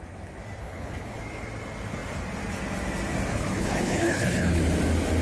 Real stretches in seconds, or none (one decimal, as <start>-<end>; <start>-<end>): 0.0-0.6; 1.2-3.3; 4.6-5.2

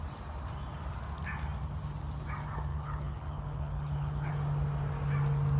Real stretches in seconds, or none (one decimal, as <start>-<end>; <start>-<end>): 0.0-2.7; 4.3-5.6

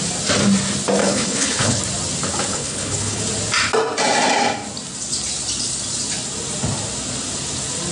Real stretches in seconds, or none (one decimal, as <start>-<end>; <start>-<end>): 0.0-1.0; 1.8-2.5; 3.2-7.9

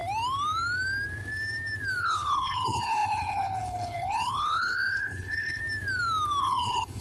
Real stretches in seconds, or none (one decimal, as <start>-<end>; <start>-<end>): 0.0-2.0; 5.6-6.4